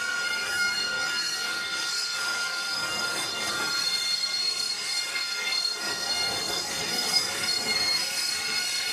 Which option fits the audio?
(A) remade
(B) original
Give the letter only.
A